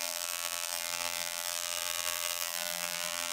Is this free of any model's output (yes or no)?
no